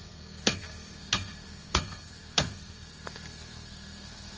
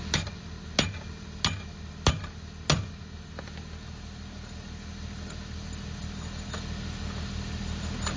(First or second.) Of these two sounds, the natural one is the second